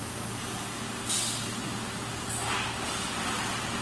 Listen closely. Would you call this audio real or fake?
real